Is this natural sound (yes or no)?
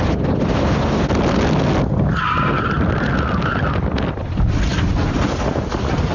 yes